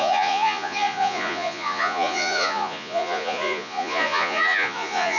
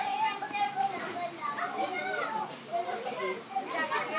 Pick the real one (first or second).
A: second